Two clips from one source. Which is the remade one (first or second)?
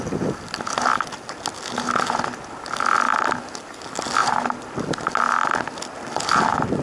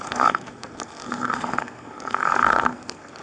second